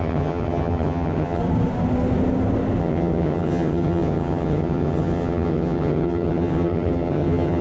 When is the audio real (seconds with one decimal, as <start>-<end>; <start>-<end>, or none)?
1.4-2.8